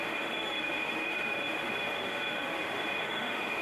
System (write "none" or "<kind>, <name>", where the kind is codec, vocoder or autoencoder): autoencoder, DAC-VAE